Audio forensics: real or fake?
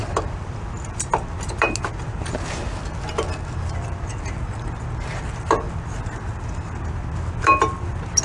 real